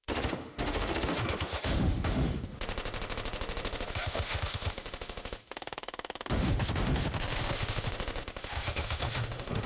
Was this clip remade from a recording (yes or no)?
yes